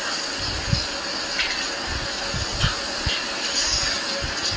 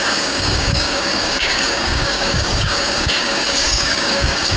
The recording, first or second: first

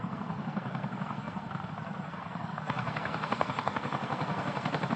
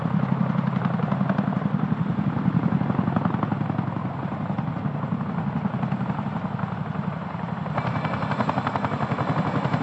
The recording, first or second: second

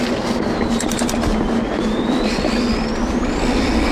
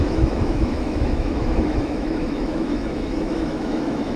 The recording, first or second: first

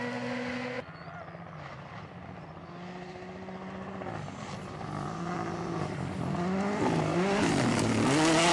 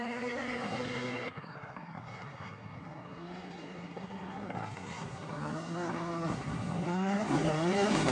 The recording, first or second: first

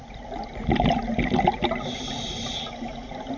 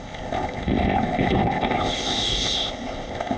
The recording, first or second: first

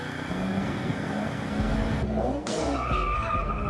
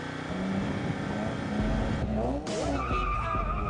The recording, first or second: second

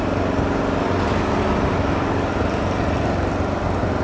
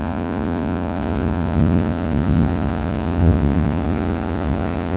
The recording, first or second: first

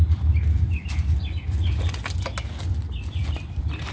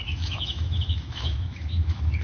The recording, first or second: first